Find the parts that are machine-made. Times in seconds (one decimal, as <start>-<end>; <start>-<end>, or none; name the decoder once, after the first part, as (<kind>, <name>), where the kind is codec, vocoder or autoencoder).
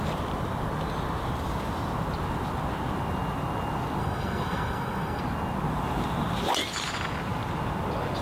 4.0-5.2 (codec, SNAC)